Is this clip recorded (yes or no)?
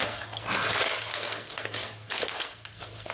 no